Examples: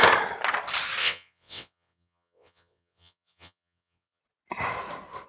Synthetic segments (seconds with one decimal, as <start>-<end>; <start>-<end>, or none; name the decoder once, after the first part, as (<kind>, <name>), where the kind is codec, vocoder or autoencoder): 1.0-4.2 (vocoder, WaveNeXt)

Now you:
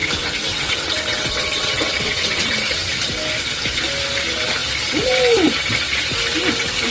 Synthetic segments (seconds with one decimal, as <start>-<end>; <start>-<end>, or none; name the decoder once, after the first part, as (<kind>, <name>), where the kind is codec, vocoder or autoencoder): 0.0-2.9 (vocoder, WaveNeXt)

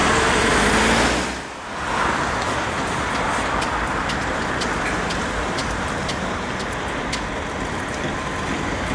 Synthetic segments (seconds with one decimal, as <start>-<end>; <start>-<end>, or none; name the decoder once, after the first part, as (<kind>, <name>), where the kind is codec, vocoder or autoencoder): none